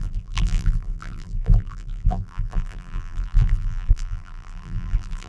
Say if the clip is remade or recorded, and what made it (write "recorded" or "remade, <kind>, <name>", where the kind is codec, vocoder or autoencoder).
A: remade, vocoder, BigVGAN v2